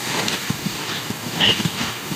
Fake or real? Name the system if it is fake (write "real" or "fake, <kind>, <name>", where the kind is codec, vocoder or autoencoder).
fake, codec, DAC